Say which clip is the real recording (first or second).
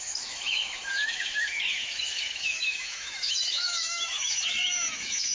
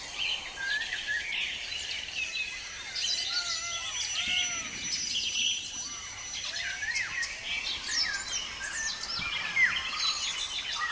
second